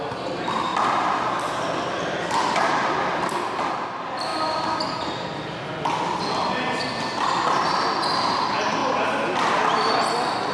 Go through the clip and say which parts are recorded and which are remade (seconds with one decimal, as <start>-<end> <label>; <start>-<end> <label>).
0.0-10.5 recorded